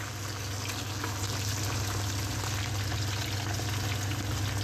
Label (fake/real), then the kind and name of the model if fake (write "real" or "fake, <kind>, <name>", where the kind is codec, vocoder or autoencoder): real